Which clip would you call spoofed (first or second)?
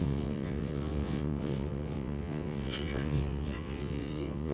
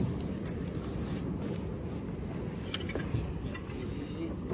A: first